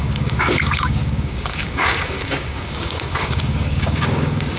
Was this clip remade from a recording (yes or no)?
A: yes